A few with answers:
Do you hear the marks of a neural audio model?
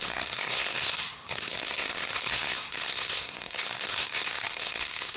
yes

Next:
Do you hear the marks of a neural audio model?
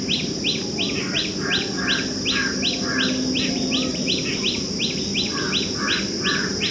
no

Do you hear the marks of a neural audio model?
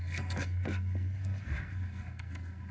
yes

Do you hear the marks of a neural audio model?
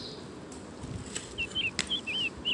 no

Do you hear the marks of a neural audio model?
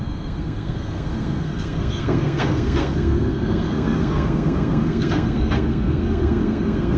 yes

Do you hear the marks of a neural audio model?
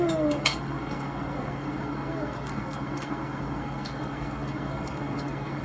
yes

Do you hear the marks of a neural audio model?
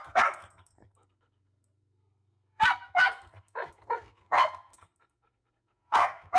yes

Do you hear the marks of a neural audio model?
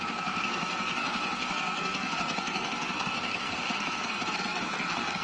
yes